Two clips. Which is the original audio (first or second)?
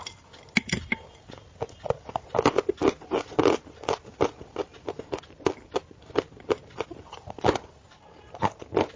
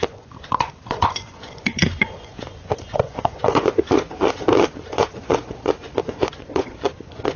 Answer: first